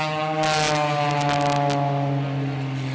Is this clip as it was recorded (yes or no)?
yes